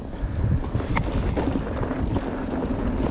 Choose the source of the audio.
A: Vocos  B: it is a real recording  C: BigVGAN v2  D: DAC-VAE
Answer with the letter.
B